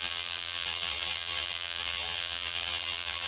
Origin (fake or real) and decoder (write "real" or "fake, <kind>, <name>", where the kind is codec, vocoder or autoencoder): fake, vocoder, BigVGAN v2